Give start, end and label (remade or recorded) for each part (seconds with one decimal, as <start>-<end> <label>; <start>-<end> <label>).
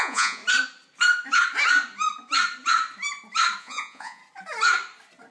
0.0-0.4 remade; 0.4-3.6 recorded; 3.6-4.2 remade; 4.2-5.3 recorded